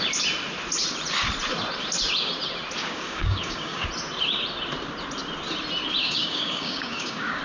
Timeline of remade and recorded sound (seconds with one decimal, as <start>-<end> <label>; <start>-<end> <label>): 0.0-2.8 recorded; 2.8-3.9 remade; 3.9-6.0 recorded; 6.0-7.4 remade